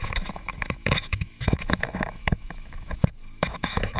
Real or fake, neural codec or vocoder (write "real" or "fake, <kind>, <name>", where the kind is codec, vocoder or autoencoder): fake, autoencoder, DAC-VAE